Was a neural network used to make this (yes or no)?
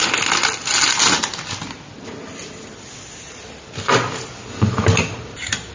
no